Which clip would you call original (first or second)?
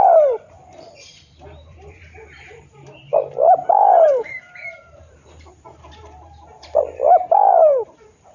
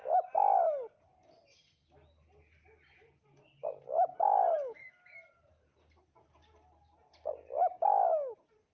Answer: second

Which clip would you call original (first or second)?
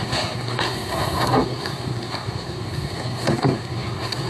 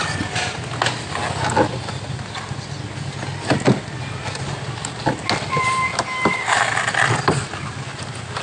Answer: second